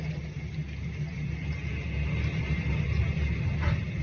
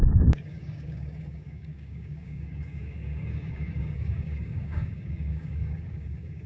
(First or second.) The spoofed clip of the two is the second